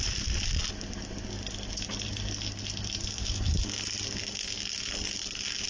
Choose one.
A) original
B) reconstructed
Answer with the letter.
A